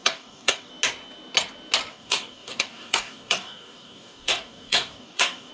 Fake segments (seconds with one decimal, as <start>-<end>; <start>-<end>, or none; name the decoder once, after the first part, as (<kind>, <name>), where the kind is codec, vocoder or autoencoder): 0.0-0.7 (codec, DAC); 1.9-5.5